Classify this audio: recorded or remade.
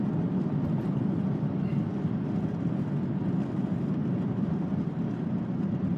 recorded